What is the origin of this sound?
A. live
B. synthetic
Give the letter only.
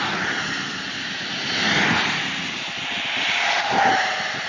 A